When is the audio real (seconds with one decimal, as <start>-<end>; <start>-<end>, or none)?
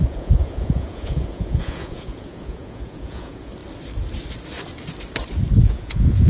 3.6-5.5